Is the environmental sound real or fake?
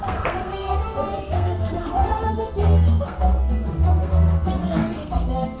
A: fake